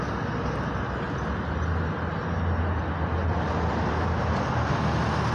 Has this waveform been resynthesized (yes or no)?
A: no